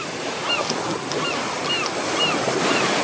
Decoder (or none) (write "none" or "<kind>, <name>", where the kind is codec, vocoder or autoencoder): none